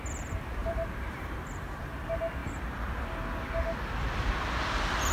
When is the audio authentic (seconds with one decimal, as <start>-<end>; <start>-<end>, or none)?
0.0-0.6; 1.8-2.4; 3.0-5.1